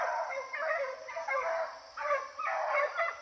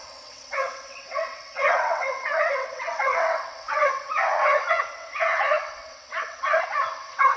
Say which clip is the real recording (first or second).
first